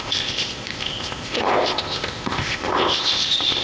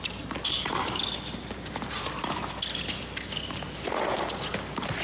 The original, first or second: second